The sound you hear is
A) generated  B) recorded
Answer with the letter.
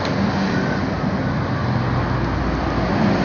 B